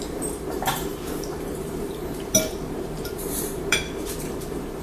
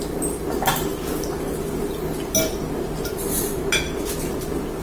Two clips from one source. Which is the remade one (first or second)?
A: first